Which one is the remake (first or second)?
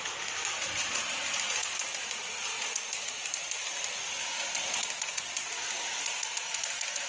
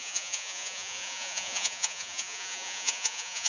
second